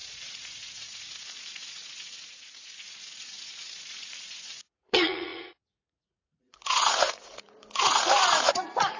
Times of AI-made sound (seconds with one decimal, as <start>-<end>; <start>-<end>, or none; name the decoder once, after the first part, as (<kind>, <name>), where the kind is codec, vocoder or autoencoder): 0.0-9.0 (vocoder, Vocos)